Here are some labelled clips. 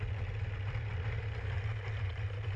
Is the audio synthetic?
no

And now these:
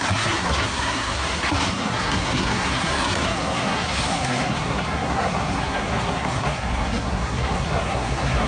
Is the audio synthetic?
yes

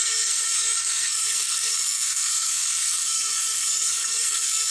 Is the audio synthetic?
yes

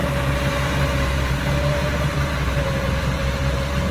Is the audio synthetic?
yes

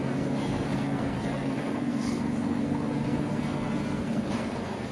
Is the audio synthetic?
yes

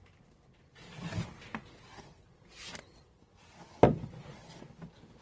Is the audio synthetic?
no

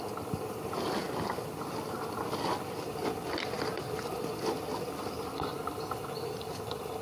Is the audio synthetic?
no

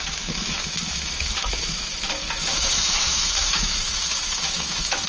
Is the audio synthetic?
yes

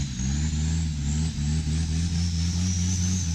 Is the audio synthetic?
no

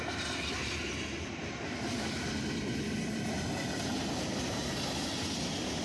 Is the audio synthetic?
no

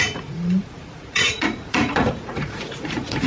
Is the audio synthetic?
yes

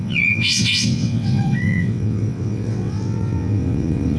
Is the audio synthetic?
yes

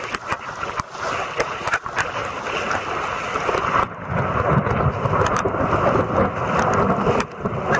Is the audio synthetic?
no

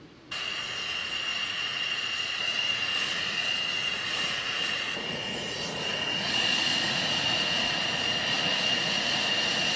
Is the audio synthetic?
yes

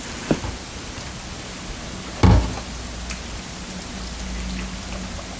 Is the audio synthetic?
no